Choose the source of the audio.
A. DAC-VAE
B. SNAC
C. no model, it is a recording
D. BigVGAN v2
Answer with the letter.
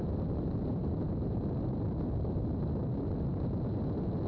C